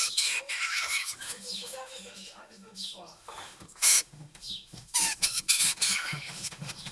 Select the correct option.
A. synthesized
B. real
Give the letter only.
A